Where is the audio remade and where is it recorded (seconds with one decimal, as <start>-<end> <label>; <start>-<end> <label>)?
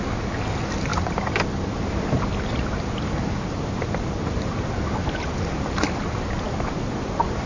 0.0-7.5 recorded